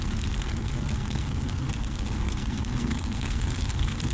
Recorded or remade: remade